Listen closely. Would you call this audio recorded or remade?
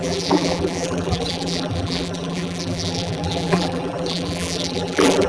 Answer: remade